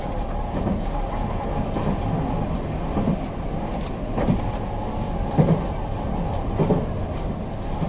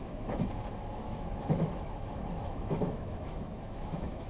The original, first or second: first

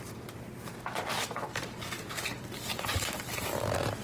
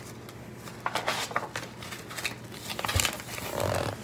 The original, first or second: second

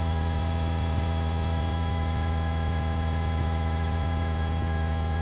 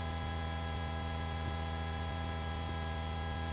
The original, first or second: second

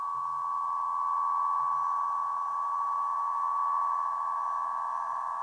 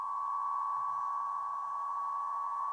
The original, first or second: first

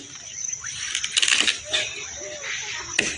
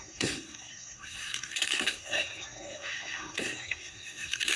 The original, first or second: first